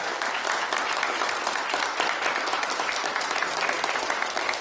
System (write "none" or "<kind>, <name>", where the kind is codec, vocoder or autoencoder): none